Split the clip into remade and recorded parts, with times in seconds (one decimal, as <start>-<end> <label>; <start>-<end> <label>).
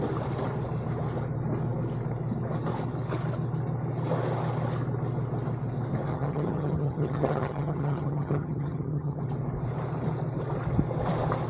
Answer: 0.0-6.1 recorded; 6.1-9.2 remade; 9.2-11.5 recorded